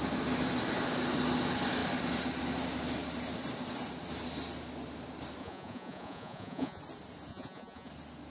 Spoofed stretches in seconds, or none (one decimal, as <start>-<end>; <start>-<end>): 5.4-6.8; 7.3-7.9